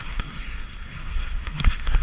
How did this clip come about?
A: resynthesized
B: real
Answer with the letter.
A